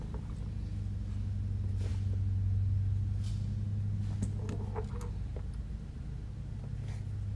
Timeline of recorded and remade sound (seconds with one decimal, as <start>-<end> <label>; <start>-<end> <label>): 0.0-7.4 recorded